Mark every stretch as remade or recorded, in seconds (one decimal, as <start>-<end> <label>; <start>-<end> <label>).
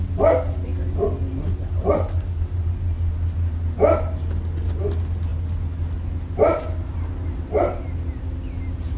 0.0-9.0 recorded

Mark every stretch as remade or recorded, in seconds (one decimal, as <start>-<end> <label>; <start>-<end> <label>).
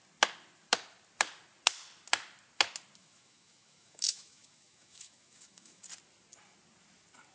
0.0-3.0 recorded; 3.0-5.8 remade; 5.8-7.3 recorded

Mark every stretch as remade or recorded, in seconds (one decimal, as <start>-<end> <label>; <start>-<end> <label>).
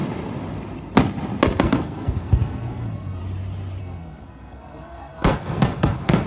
0.0-1.6 recorded; 1.6-3.2 remade; 3.2-3.8 recorded; 3.8-6.3 remade